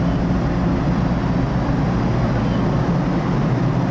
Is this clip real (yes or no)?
yes